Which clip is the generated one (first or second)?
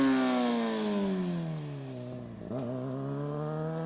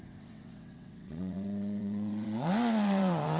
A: second